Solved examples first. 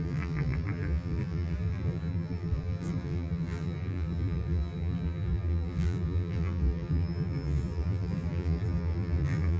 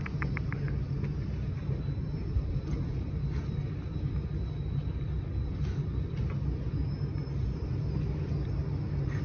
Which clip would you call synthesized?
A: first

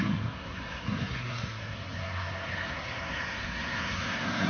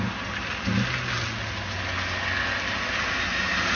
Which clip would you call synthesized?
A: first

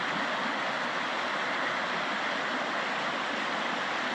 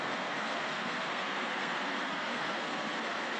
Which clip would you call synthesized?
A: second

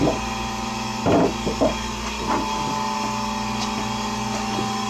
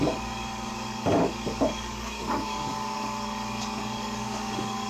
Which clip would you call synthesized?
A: second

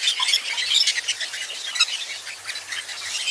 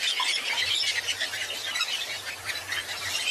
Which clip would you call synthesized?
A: second